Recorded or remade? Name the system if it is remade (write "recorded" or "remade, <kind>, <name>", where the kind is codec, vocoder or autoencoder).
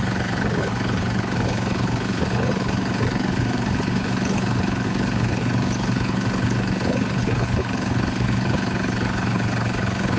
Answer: remade, codec, HILCodec